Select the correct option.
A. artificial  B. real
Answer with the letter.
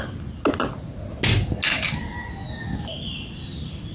B